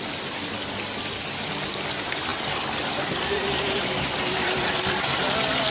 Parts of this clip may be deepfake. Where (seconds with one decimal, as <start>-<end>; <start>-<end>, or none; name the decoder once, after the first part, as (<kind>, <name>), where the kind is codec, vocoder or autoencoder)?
none